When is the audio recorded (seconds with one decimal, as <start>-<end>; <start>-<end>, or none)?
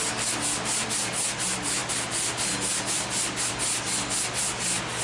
0.0-5.0